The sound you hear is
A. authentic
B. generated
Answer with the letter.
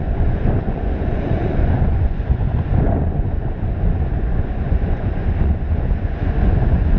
B